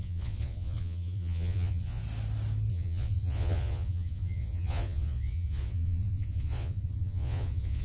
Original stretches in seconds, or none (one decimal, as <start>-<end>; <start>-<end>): 2.0-2.7

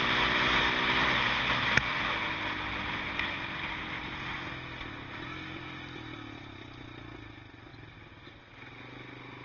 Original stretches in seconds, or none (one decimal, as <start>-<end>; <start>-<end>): 0.0-9.4

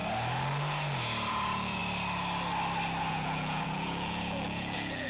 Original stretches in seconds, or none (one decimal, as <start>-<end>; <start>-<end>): 0.0-1.3; 1.8-3.1

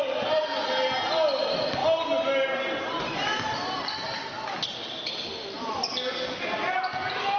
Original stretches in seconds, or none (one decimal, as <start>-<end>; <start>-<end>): 0.0-7.4

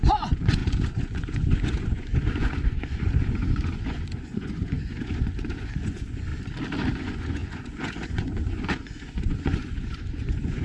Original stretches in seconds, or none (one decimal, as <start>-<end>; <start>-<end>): 6.3-6.9

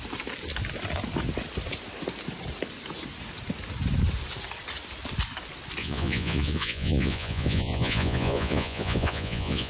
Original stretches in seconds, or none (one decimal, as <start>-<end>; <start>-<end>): 0.0-5.8

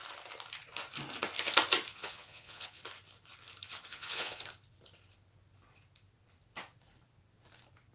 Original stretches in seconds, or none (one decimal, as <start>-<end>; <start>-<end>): 0.0-1.9; 2.8-3.9; 4.4-7.9